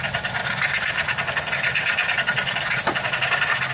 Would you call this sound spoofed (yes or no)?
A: no